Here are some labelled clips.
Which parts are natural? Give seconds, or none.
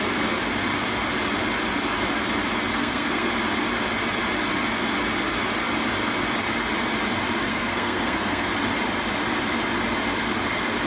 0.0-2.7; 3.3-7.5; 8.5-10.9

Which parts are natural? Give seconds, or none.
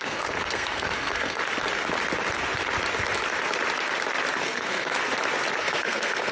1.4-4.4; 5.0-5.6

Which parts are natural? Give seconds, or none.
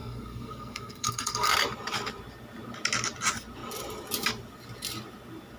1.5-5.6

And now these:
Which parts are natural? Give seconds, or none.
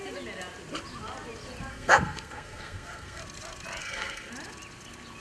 0.0-1.7; 3.2-3.8; 4.3-5.2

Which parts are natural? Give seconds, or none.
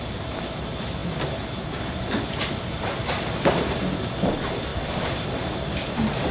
0.0-6.3